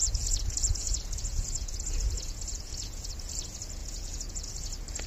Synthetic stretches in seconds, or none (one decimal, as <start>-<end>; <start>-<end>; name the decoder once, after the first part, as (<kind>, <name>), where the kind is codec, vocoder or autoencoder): 0.0-3.1 (vocoder, Vocos); 3.8-4.5